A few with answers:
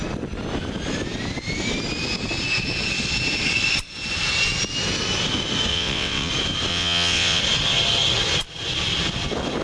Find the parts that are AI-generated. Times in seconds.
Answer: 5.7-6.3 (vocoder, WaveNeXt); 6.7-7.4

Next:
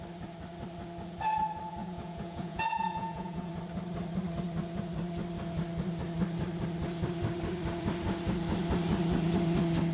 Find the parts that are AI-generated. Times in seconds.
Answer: 1.8-3.5 (vocoder, Vocos)

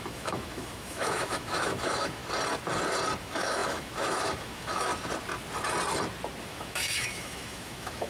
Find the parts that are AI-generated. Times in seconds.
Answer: 0.0-2.2 (autoencoder, DAC-VAE); 3.2-4.9; 6.4-8.1

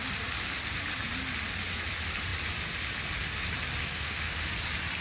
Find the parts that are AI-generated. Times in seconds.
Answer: 3.9-4.5 (autoencoder, DAC-VAE)

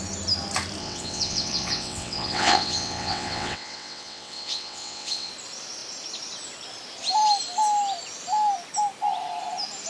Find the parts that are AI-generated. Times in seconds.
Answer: 0.8-5.3 (vocoder, WaveNeXt)

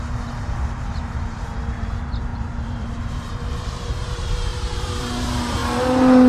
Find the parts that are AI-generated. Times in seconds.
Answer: 0.0-5.6 (vocoder, BigVGAN v2)